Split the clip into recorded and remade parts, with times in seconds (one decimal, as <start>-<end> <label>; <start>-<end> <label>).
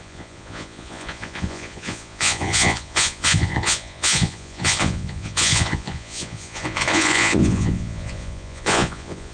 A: 0.0-9.3 remade